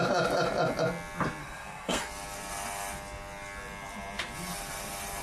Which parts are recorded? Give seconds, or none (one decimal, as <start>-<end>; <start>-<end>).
0.0-1.4; 2.0-5.2